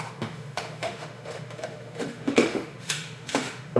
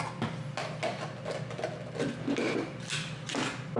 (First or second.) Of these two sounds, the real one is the second